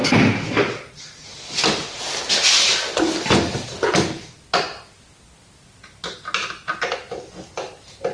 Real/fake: real